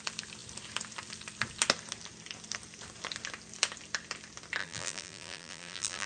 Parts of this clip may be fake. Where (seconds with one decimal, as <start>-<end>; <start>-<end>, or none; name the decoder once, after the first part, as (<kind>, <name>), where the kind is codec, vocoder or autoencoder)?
4.6-6.1 (vocoder, BigVGAN v2)